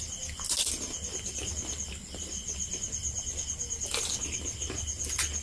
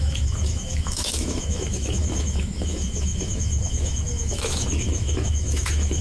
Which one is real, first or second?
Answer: first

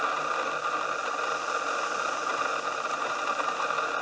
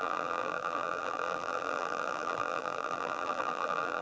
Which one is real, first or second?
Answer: first